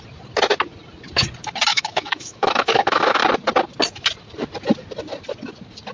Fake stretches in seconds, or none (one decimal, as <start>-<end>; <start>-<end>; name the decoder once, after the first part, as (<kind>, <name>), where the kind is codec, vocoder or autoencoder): 1.7-3.2 (autoencoder, DAC-VAE)